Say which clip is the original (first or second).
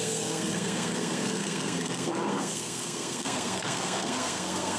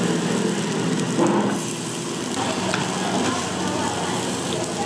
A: second